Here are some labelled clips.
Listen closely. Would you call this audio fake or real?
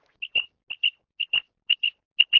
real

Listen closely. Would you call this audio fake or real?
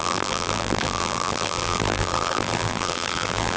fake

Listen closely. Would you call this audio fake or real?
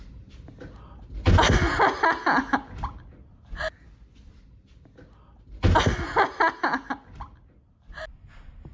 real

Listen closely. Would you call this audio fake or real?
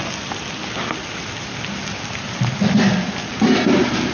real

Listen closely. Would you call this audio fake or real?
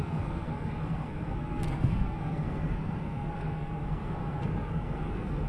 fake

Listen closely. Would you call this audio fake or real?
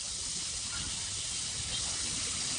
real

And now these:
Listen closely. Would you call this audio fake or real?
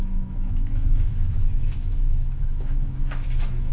fake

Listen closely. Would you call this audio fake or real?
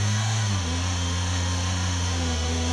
fake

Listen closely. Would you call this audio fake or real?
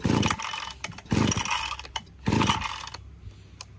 real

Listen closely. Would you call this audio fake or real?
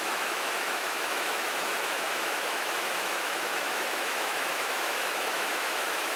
fake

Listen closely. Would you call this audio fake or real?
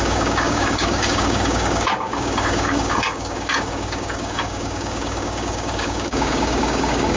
fake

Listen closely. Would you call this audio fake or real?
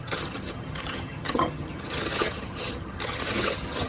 fake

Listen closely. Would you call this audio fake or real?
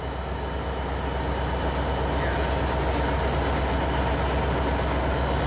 real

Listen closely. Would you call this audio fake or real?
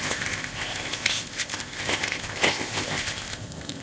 fake